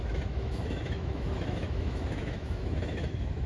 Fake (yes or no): yes